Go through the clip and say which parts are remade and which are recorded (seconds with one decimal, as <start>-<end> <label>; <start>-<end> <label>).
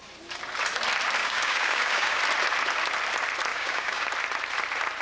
0.0-1.2 recorded; 1.2-2.2 remade; 2.2-3.5 recorded; 3.5-4.1 remade; 4.1-5.0 recorded